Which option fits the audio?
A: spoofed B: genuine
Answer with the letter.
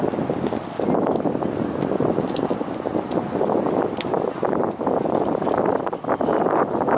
B